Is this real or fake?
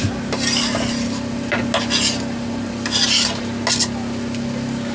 real